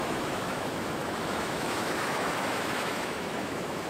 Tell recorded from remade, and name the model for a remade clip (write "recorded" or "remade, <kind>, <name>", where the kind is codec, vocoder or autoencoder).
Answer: remade, autoencoder, DAC-VAE